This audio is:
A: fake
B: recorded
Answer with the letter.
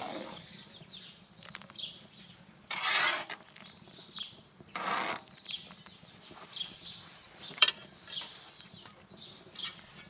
A